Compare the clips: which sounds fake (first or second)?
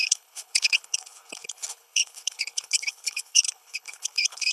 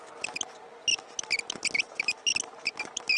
first